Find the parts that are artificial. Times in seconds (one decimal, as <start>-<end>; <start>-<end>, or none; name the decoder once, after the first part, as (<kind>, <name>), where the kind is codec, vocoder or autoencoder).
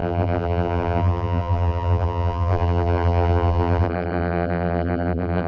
0.0-5.5 (vocoder, BigVGAN v2)